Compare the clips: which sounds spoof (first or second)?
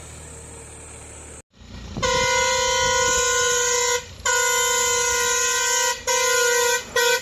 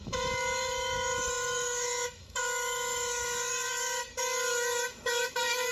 second